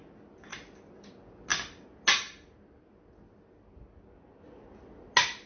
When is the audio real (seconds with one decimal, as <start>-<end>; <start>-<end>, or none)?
0.0-5.5